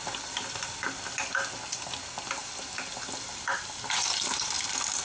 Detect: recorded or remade recorded